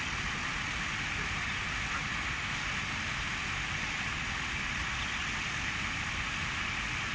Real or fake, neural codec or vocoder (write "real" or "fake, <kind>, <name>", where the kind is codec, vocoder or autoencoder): real